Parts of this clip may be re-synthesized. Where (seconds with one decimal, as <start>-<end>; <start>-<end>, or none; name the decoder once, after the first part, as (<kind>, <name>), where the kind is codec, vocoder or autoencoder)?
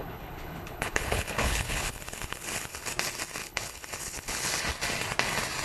0.0-2.9 (codec, HILCodec); 3.4-4.6